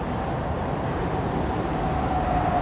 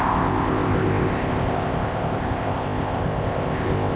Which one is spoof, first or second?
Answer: second